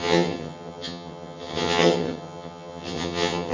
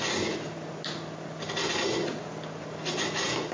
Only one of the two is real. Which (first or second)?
second